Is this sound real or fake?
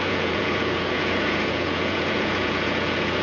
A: fake